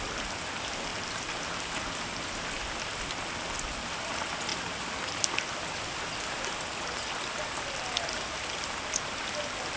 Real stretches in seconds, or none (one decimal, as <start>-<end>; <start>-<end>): 0.0-9.8